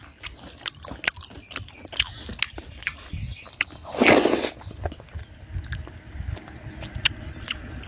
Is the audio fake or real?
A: real